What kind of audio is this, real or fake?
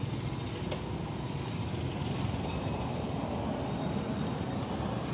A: real